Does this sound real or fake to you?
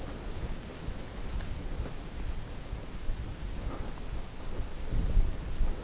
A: real